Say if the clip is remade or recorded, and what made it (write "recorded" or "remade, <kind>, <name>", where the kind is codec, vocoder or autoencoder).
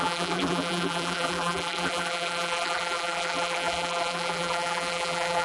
remade, vocoder, BigVGAN v2